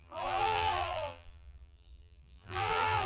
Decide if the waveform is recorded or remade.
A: remade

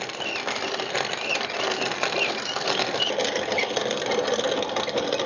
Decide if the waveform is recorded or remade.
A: recorded